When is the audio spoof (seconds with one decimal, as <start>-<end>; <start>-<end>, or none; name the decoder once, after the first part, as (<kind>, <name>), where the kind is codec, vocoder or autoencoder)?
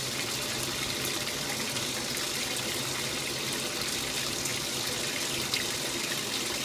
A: none